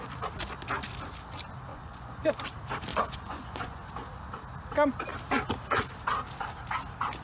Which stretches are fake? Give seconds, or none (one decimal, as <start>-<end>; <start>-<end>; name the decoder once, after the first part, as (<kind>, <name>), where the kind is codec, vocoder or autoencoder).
1.7-2.3 (vocoder, Vocos); 2.9-3.9